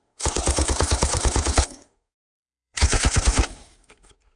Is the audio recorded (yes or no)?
no